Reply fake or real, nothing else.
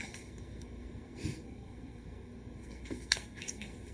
fake